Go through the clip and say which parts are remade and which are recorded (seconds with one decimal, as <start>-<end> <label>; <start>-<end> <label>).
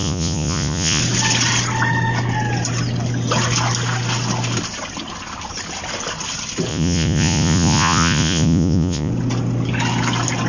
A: 0.0-1.0 remade; 1.0-6.7 recorded; 6.7-9.1 remade; 9.1-10.5 recorded